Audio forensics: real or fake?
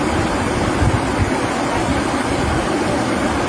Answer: real